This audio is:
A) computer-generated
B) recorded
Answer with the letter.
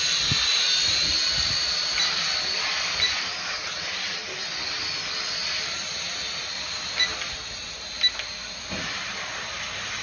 B